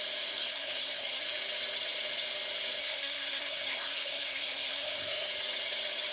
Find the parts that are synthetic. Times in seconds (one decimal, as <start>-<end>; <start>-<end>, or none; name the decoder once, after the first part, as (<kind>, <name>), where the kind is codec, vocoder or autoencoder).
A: 0.4-1.2 (codec, SNAC); 2.8-5.3